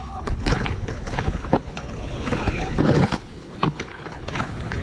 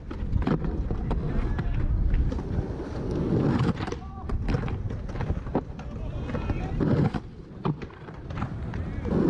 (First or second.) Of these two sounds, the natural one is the second